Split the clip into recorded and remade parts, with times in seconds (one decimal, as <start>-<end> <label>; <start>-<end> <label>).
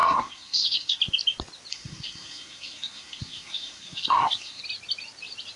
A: 0.0-1.0 remade; 1.0-1.7 recorded; 1.7-4.6 remade; 4.6-5.6 recorded